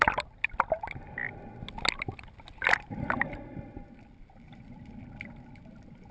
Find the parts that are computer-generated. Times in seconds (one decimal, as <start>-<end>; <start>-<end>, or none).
none